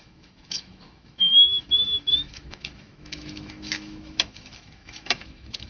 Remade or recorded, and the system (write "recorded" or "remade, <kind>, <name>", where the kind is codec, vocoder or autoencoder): remade, autoencoder, DAC-VAE